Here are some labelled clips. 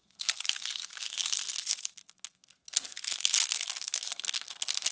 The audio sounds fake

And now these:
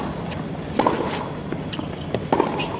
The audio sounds real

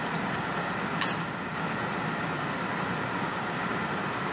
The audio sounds real